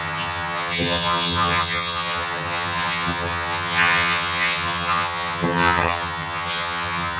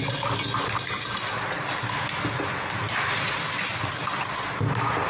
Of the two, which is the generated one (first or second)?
first